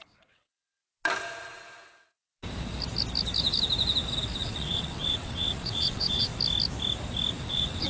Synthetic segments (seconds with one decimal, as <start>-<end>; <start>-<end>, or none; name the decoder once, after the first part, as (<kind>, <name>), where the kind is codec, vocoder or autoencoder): 0.0-0.8 (vocoder, WaveNeXt); 1.9-2.3; 4.4-6.3; 7.5-7.9